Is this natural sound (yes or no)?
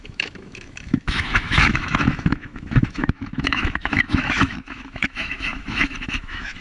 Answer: no